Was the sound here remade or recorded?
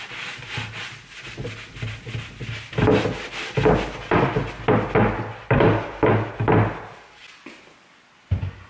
recorded